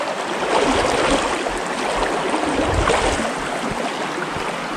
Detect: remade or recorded recorded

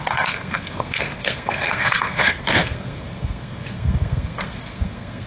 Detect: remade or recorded remade